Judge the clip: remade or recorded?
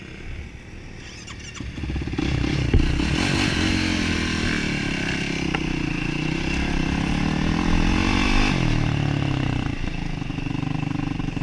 recorded